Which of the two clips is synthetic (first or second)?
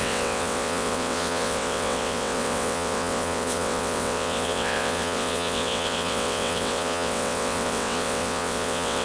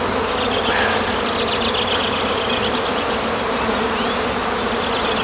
first